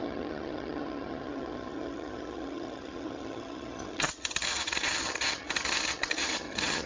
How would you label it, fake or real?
fake